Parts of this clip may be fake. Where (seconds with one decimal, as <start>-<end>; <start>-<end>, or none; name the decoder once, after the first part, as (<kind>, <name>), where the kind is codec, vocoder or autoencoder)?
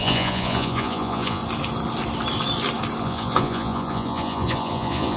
0.0-1.4 (vocoder, Vocos); 3.0-5.2